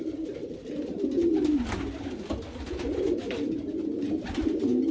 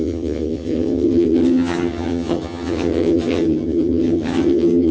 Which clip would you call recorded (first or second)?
first